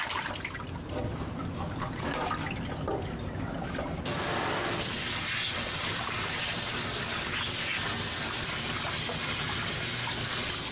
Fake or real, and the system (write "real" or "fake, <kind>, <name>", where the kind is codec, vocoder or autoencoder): real